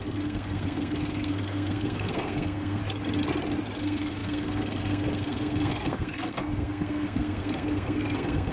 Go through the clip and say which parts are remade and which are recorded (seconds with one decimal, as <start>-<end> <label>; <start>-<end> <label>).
0.0-2.8 remade; 2.8-3.8 recorded; 3.8-8.5 remade